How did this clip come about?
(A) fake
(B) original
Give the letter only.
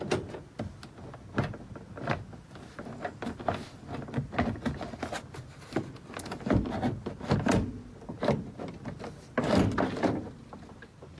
B